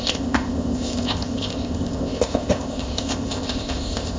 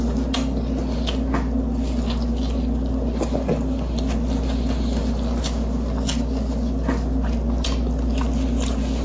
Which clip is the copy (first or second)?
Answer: first